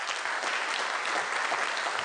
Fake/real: real